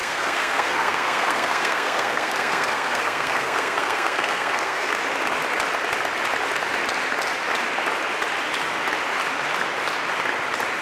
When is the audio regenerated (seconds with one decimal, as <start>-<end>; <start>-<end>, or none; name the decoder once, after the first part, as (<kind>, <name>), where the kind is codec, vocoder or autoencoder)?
0.0-5.0 (codec, SNAC)